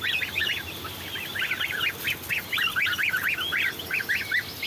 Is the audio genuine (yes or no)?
yes